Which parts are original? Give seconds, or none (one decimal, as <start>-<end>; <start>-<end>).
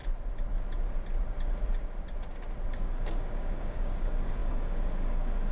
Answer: 0.0-2.7